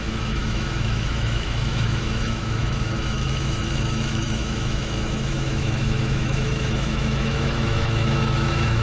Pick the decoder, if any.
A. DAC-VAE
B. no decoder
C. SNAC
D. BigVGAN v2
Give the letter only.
A